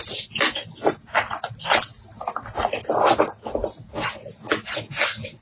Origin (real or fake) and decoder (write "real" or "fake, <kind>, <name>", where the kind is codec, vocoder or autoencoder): real